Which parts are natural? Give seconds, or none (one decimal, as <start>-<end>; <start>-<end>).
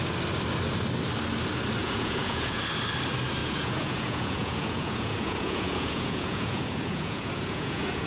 0.0-1.8; 2.6-3.4